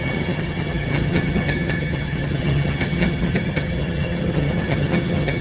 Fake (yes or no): yes